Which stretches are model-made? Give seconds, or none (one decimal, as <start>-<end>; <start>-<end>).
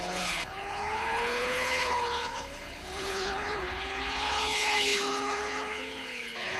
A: 0.0-6.6